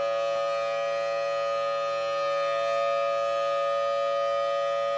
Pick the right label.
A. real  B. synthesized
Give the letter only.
A